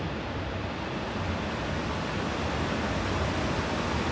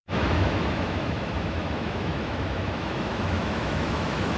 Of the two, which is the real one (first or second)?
first